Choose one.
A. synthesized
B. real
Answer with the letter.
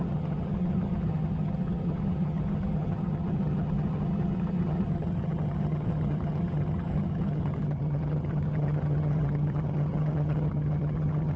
A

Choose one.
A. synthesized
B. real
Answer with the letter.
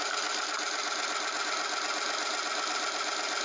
B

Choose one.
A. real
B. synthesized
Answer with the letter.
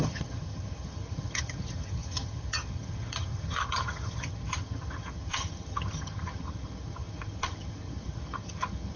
B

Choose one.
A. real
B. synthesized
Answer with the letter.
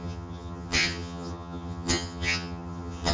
B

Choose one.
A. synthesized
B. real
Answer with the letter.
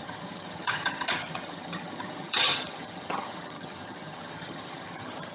A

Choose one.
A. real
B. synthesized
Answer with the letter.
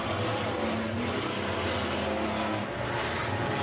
A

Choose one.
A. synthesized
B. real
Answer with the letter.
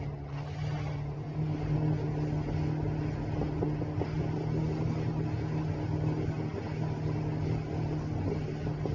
B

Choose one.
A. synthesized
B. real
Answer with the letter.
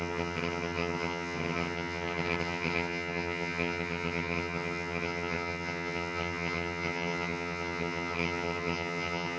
A